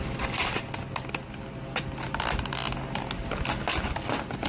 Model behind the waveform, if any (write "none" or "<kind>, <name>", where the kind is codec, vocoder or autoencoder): none